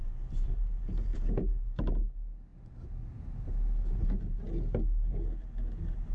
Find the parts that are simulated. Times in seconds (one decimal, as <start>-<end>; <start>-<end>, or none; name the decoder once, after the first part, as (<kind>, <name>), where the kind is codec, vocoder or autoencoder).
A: none